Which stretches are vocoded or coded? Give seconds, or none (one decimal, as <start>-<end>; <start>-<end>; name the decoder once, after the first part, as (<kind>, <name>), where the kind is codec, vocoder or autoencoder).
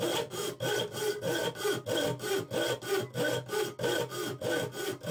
none